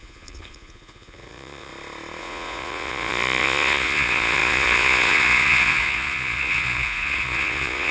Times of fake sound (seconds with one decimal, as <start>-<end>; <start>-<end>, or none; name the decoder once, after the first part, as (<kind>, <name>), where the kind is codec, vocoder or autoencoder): 0.0-1.7 (vocoder, Vocos); 2.2-7.9